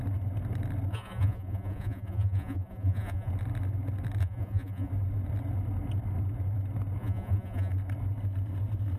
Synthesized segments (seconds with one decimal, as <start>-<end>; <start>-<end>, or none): 0.9-3.3; 4.2-4.9; 7.0-7.7